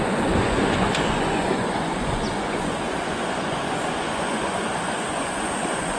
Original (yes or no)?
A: no